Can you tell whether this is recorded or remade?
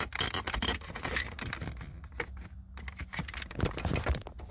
recorded